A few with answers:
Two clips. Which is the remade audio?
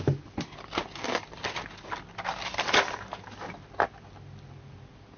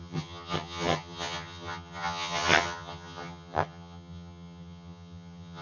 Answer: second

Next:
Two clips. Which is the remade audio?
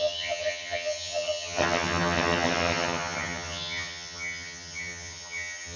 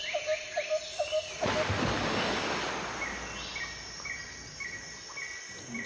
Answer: first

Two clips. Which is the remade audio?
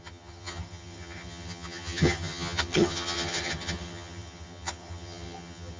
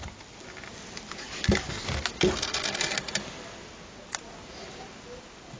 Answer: first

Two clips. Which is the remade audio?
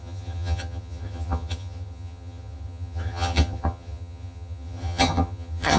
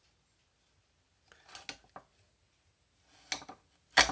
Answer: first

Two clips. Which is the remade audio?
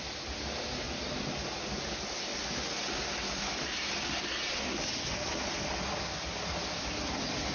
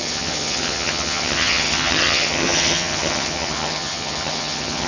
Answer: second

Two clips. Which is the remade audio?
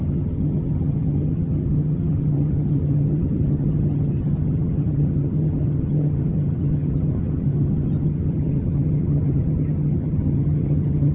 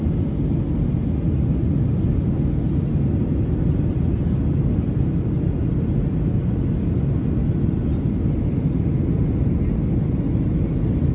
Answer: first